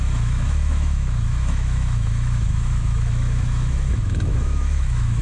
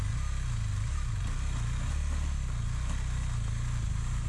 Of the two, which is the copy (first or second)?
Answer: first